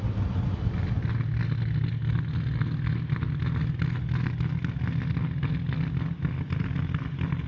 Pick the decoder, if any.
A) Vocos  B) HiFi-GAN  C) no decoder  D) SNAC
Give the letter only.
C